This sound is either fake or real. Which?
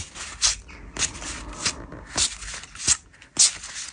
real